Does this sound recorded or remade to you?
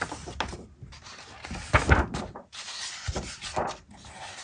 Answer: recorded